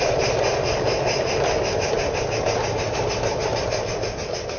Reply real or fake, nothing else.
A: real